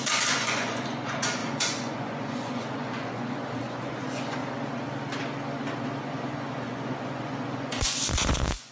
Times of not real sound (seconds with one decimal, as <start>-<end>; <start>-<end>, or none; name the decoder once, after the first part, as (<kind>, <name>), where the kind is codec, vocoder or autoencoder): 0.0-4.4 (vocoder, Vocos); 6.0-8.7